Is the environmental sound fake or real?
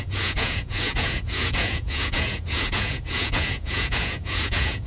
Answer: fake